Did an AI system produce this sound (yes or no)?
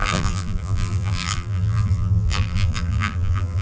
yes